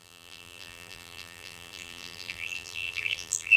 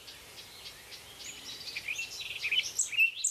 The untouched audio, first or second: second